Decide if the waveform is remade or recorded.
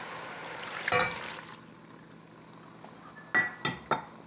recorded